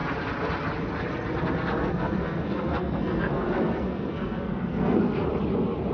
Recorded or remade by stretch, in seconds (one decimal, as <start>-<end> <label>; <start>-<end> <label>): 0.0-1.8 recorded; 1.8-5.3 remade; 5.3-5.9 recorded